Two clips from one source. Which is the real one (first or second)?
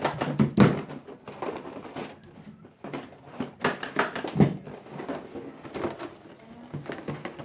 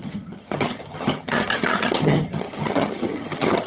first